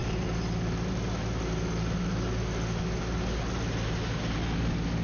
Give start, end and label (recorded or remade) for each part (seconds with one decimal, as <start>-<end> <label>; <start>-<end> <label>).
0.0-5.0 recorded